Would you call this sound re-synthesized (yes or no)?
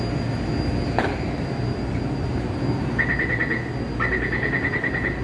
no